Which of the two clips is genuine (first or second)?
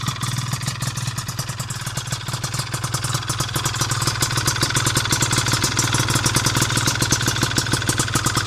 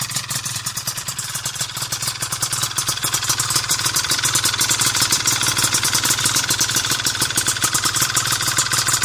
first